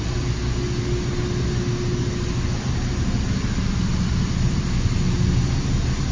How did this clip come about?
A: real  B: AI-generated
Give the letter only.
A